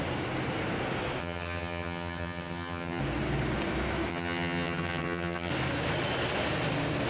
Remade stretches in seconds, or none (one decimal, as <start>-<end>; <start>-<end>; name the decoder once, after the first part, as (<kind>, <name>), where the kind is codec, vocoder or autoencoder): 1.2-3.0 (vocoder, HiFi-GAN); 4.1-5.5